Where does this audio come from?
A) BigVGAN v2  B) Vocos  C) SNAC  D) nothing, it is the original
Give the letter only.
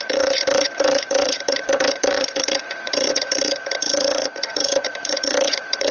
B